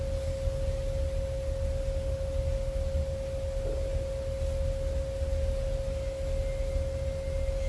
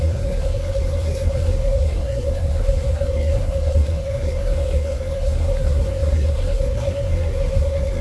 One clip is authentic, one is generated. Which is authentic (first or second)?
first